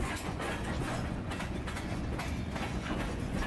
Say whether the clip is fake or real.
fake